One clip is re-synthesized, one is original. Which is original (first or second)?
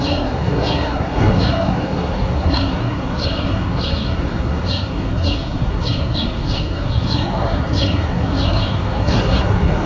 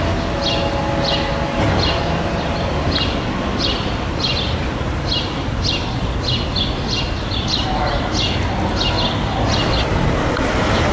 second